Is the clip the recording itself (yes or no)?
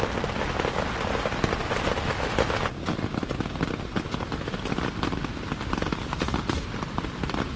yes